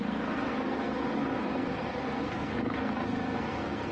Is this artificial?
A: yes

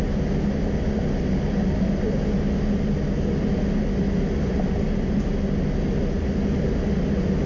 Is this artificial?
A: no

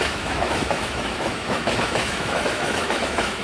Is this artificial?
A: yes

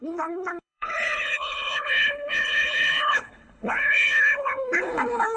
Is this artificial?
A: yes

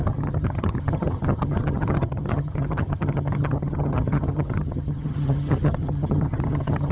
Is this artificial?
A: yes